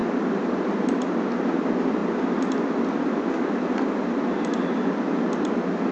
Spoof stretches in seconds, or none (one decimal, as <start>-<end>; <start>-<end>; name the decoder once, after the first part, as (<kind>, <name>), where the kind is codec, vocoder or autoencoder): none